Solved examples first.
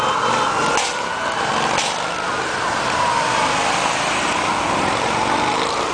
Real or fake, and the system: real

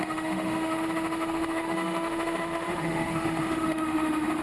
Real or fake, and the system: fake, autoencoder, DAC-VAE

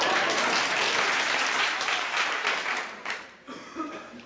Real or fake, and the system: fake, vocoder, BigVGAN v2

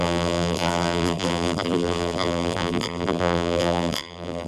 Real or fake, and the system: fake, vocoder, BigVGAN v2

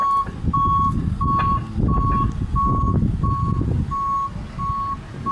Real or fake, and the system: real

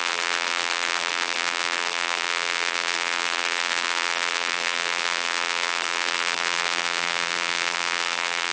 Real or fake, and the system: fake, vocoder, BigVGAN v2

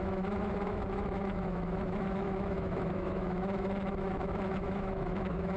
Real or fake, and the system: fake, autoencoder, DAC-VAE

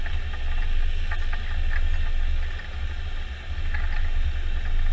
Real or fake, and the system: real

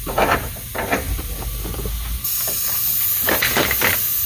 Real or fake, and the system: real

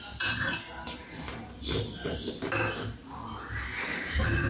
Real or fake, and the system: real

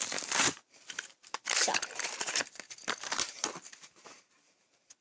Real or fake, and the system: fake, vocoder, BigVGAN v2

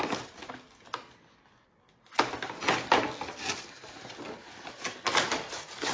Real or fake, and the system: real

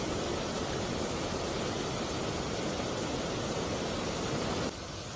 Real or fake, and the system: real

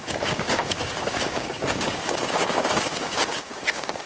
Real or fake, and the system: fake, codec, DAC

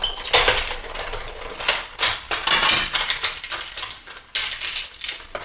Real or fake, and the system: real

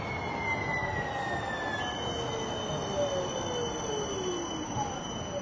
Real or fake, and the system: real